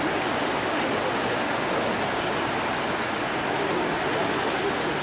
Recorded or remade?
recorded